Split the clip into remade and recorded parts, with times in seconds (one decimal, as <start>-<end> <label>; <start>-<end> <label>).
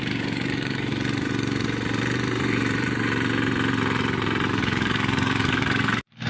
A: 0.0-0.9 remade; 0.9-4.5 recorded; 4.5-6.3 remade